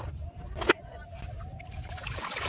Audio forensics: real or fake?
real